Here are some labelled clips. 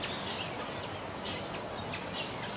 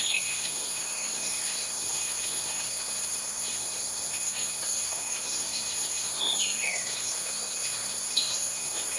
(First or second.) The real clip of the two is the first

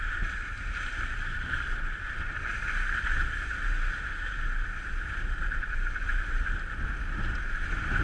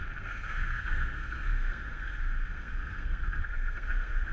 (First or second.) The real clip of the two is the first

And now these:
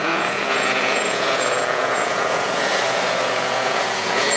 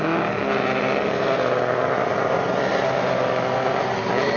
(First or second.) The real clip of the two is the second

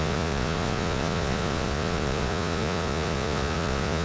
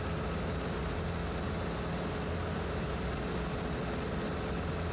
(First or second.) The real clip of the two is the second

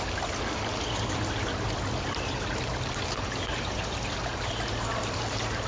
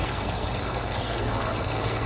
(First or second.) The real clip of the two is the first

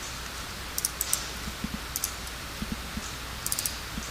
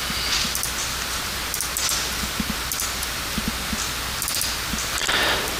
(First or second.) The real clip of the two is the second